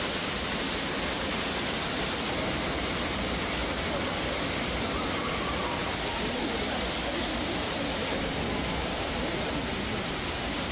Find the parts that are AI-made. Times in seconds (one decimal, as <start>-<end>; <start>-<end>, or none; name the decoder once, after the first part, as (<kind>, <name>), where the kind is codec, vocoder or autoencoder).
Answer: none